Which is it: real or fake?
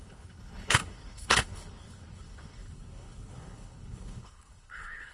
fake